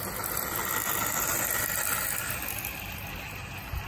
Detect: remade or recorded recorded